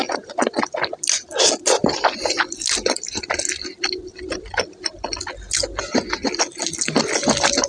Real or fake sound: real